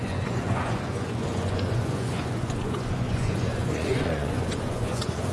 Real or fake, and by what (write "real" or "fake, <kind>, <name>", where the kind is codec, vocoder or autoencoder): fake, vocoder, Vocos